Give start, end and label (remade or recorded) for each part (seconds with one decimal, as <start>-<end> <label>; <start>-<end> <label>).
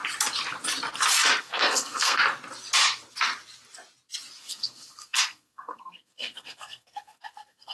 0.0-1.4 recorded; 1.4-2.2 remade; 2.2-4.4 recorded; 4.4-7.7 remade